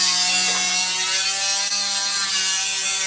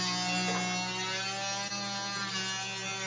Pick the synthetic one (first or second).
first